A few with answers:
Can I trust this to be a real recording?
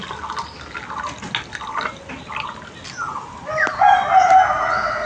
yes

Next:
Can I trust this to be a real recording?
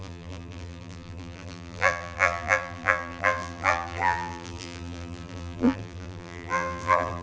no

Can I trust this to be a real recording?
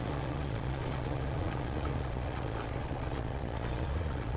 no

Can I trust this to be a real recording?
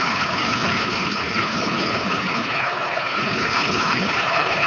no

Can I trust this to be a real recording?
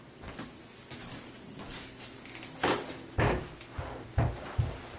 yes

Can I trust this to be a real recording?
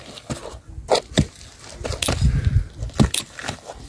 yes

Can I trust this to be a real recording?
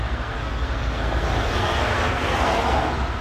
no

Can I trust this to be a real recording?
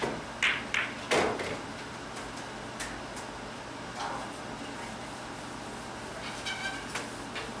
yes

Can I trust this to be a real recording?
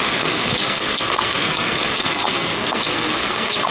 no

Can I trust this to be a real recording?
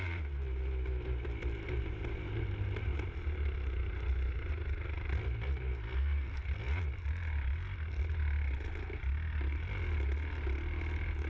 yes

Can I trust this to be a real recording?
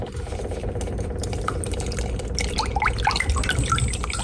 yes